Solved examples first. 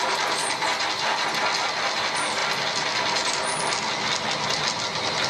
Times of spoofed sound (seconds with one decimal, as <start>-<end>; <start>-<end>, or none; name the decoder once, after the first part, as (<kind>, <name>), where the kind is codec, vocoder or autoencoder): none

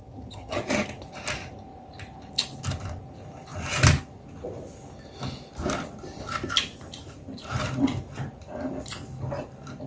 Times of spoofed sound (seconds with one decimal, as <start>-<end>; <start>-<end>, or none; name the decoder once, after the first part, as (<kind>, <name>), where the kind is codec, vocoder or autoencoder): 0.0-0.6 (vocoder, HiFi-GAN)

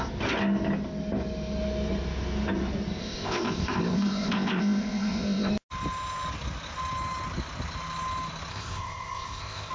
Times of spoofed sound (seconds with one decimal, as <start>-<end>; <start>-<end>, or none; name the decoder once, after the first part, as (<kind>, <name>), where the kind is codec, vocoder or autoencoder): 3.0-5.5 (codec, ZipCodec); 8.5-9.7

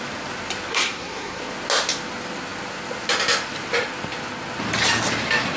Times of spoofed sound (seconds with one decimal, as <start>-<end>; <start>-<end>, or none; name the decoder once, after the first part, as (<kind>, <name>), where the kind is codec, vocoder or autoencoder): 0.7-1.4 (codec, SNAC)

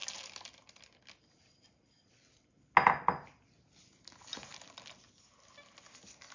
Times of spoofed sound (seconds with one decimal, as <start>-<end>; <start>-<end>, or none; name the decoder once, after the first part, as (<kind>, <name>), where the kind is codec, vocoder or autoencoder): none

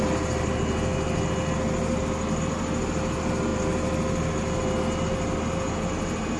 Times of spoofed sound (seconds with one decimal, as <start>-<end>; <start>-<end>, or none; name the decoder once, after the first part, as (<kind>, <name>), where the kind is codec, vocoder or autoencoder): none

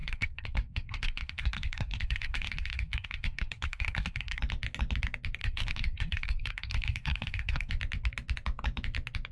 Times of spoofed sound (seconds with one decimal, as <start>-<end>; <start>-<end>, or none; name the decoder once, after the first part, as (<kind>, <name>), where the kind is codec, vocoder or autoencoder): 0.0-4.4 (codec, SNAC); 5.4-7.7